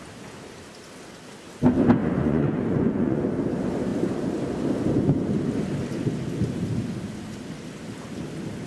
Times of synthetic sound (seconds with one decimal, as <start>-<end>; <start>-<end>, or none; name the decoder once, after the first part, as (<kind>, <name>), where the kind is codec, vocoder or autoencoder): 2.0-3.2 (vocoder, Vocos)